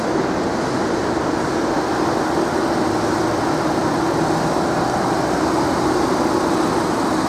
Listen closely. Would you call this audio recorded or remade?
recorded